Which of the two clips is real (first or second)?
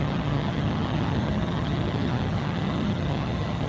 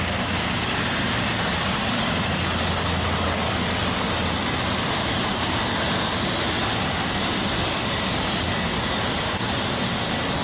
second